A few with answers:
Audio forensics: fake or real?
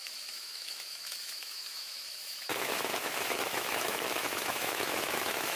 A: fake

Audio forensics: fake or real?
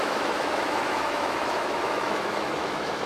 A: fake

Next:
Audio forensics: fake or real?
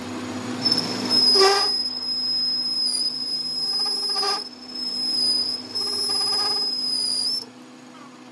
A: real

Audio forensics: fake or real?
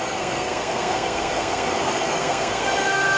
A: fake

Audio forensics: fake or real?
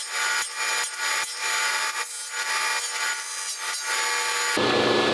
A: real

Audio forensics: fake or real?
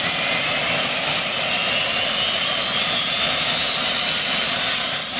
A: fake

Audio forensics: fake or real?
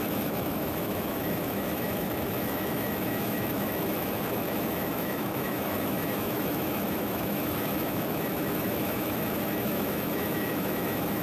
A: fake